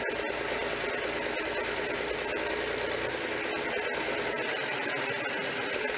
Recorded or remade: recorded